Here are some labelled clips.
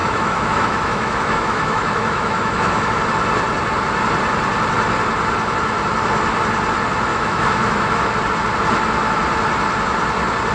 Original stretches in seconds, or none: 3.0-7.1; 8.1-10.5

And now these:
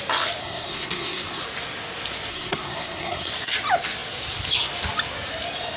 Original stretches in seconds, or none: 0.0-0.4; 1.4-2.3; 3.3-5.8

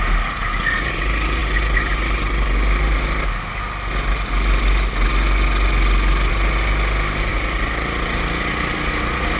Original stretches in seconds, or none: 0.0-9.4

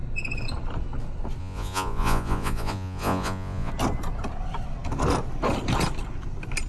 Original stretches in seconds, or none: 0.0-1.4; 3.7-6.7